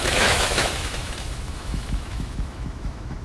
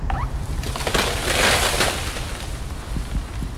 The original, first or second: second